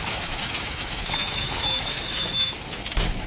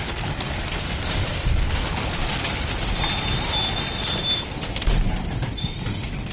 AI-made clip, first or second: first